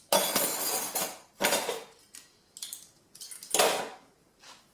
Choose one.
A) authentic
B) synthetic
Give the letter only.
A